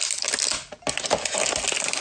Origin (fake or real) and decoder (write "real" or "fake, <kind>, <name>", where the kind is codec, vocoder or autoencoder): real